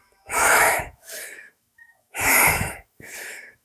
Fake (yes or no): yes